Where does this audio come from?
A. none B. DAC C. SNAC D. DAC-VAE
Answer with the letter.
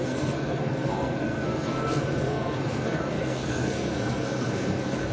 C